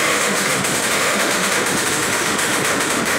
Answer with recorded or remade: remade